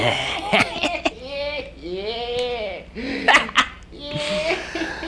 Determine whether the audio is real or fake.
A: real